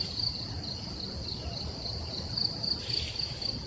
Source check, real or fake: real